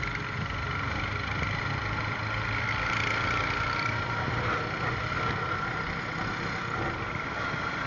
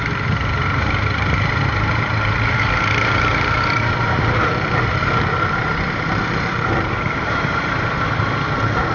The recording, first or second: first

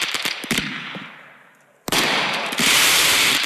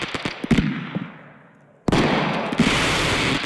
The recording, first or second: second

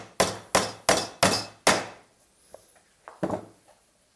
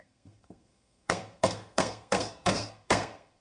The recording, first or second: first